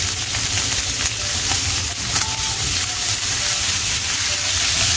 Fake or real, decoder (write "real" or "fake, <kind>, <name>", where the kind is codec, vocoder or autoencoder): real